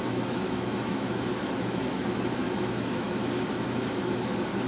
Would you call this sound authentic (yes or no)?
no